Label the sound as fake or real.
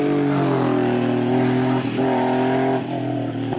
real